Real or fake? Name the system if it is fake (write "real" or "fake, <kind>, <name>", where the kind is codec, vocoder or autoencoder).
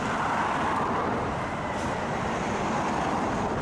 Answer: real